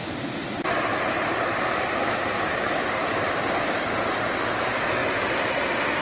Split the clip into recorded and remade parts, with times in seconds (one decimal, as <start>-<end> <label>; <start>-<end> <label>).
0.0-6.0 recorded